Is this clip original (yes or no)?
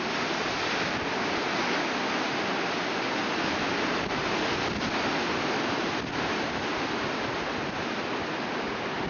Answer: yes